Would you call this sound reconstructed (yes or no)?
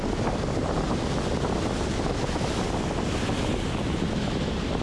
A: no